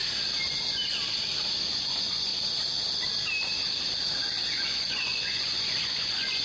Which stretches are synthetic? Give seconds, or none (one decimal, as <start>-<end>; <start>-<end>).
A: 1.7-2.3; 4.5-6.4